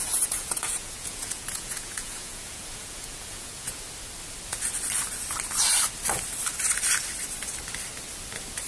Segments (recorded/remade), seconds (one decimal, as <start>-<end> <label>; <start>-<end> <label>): 0.0-3.8 remade; 3.8-8.7 recorded